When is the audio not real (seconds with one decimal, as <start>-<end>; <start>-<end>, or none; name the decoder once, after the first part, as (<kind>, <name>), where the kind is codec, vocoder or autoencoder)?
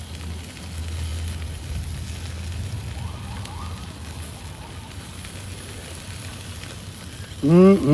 none